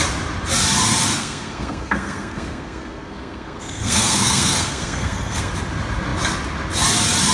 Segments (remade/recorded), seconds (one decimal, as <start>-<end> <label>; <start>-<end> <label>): 0.0-1.1 recorded; 1.1-5.5 remade; 5.5-7.3 recorded